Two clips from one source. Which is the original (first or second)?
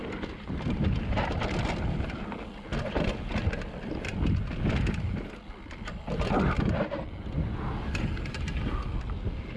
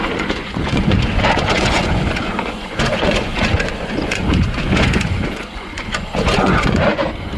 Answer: first